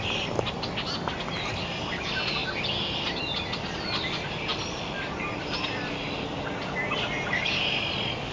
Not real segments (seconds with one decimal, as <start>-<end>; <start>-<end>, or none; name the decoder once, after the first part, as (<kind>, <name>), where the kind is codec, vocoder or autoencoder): none